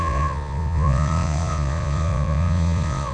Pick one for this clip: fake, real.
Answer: fake